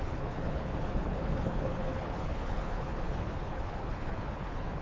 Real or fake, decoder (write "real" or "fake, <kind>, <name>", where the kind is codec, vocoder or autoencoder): fake, codec, HILCodec